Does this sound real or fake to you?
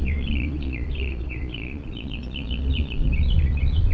fake